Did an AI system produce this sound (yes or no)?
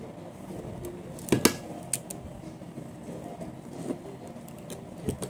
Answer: no